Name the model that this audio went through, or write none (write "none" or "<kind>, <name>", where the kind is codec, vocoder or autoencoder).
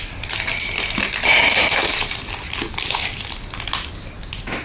none